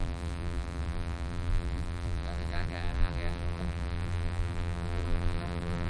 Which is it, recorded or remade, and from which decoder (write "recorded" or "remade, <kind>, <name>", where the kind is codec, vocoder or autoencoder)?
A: remade, vocoder, BigVGAN v2